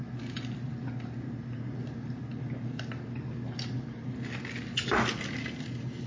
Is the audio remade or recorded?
recorded